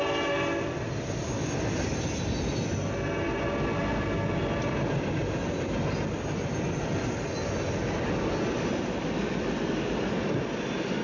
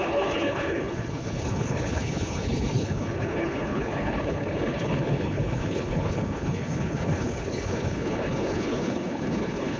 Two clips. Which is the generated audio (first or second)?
second